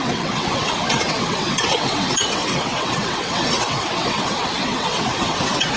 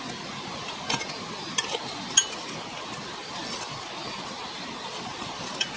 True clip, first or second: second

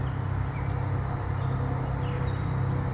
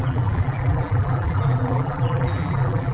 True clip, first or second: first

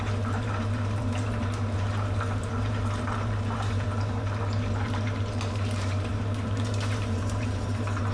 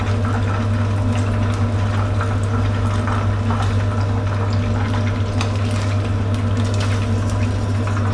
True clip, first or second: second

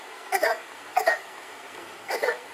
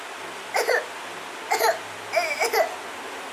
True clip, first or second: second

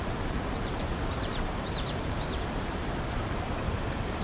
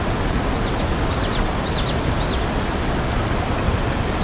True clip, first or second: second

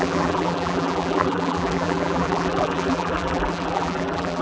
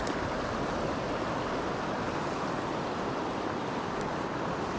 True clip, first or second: second